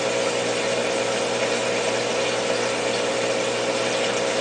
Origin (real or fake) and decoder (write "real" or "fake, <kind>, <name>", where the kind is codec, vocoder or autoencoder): real